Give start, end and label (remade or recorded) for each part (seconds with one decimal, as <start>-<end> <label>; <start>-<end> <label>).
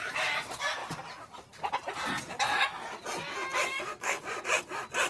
0.0-3.7 recorded; 3.7-4.2 remade; 4.2-5.1 recorded